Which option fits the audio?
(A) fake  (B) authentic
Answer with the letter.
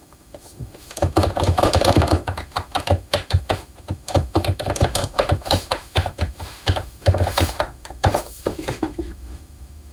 A